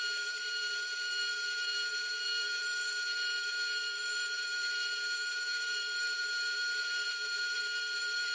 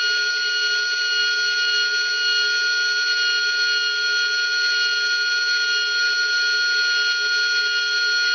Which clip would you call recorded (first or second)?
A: second